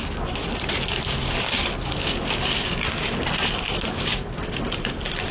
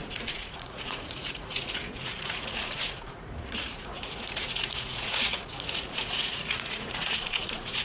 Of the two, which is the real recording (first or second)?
first